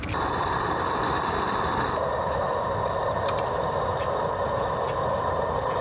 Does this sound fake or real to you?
real